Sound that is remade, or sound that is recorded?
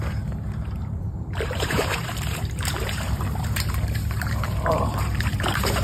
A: remade